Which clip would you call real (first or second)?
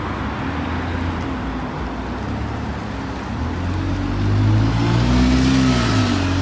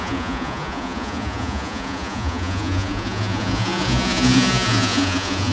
first